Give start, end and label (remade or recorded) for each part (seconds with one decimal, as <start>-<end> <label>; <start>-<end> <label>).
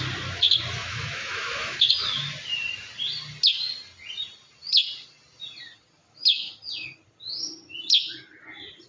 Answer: 0.0-0.8 recorded; 0.8-1.9 remade; 1.9-6.0 recorded; 6.0-6.5 remade; 6.5-8.9 recorded